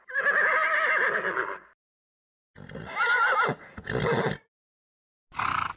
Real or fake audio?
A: real